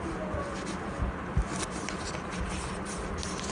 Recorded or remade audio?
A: recorded